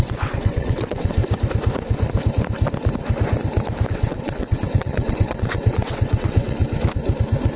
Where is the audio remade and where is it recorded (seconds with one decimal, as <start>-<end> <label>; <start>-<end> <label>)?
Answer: 0.0-1.2 remade; 1.2-3.9 recorded; 3.9-6.6 remade; 6.6-7.6 recorded